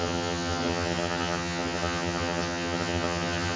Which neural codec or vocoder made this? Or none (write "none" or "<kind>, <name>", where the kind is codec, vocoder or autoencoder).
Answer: vocoder, HiFi-GAN